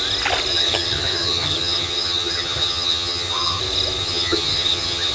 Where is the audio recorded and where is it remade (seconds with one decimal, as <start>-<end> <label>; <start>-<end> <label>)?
0.0-0.5 recorded; 0.5-3.6 remade; 3.6-4.0 recorded; 4.0-5.1 remade